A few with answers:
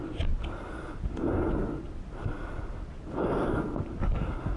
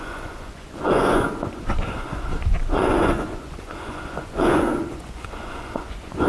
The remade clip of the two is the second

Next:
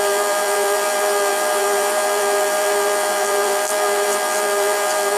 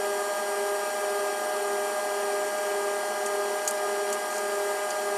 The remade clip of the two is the first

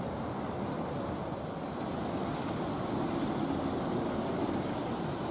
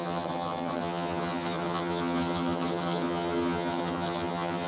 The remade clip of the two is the second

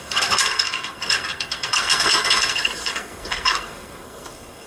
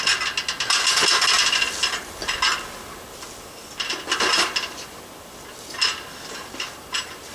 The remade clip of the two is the first